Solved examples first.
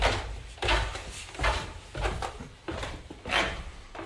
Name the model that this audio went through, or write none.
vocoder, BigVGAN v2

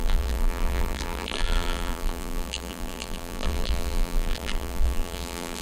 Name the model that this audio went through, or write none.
vocoder, BigVGAN v2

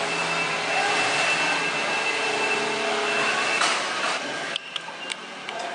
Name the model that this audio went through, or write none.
none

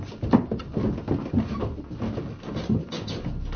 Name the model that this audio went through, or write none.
none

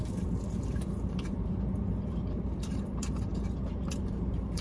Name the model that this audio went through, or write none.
vocoder, BigVGAN v2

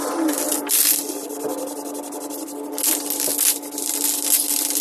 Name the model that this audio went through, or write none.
none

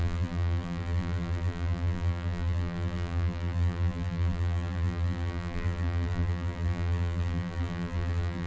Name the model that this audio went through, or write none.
vocoder, BigVGAN v2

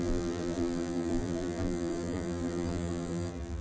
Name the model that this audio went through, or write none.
vocoder, BigVGAN v2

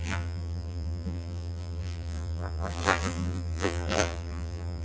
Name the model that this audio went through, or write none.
vocoder, BigVGAN v2